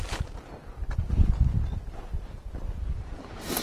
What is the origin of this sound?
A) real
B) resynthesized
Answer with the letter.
A